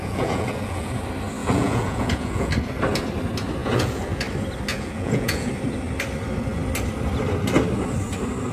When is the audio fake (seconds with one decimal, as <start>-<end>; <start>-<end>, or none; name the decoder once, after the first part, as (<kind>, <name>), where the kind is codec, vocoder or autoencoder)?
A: 0.0-0.9 (vocoder, Vocos); 1.4-2.5; 3.6-4.2; 4.7-5.5